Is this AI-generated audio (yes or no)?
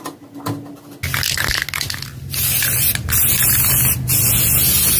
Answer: no